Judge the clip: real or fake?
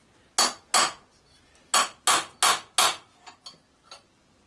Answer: real